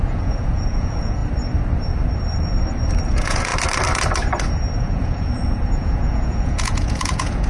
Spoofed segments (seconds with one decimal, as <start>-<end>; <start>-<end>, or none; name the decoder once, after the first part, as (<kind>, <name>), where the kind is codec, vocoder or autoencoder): 0.0-1.2 (vocoder, Vocos); 3.1-3.5; 4.8-7.5